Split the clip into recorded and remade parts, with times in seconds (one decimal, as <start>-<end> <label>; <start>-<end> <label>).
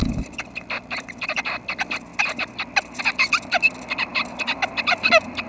0.0-1.4 remade; 1.4-5.5 recorded